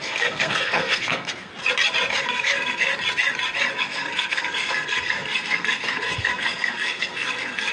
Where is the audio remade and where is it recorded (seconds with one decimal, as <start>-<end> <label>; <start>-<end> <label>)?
0.0-1.5 remade; 1.5-2.2 recorded; 2.2-2.9 remade; 2.9-3.8 recorded; 3.8-7.7 remade